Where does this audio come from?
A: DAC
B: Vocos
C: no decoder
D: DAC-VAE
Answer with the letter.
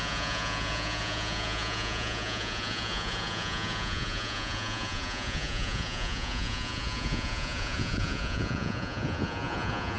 B